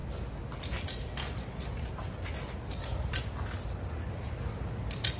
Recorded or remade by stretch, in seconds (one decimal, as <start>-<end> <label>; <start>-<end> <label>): 0.0-5.2 recorded